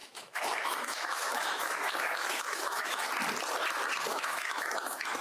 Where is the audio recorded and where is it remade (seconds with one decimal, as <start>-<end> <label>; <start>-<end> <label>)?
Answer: 0.0-3.1 remade; 3.1-4.1 recorded; 4.1-5.2 remade